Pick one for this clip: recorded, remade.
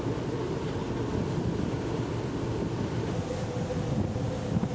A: recorded